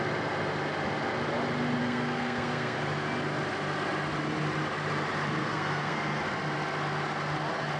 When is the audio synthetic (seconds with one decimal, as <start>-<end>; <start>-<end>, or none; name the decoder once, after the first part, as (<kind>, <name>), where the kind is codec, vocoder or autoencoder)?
1.8-2.8 (codec, SNAC); 5.4-6.2